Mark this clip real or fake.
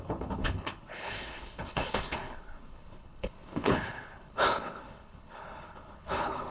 fake